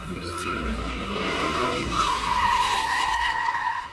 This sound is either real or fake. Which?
fake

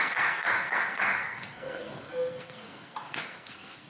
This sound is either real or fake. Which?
fake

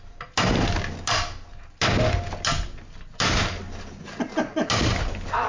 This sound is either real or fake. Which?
real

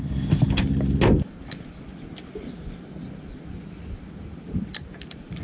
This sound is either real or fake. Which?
real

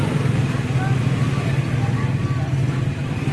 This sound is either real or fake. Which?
real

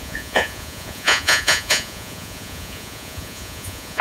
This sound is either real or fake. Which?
fake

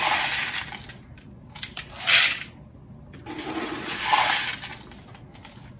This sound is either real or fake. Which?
real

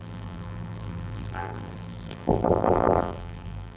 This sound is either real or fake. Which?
fake